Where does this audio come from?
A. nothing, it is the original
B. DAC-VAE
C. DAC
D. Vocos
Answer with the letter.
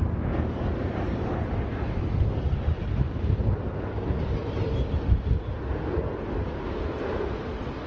A